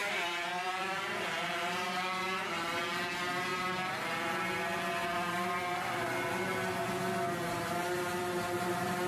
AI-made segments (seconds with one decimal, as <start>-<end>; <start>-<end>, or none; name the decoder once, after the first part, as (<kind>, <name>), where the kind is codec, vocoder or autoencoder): 0.0-1.5 (vocoder, BigVGAN v2)